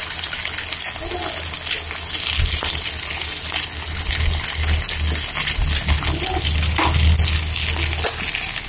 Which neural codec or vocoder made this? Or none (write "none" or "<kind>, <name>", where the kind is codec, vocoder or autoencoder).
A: none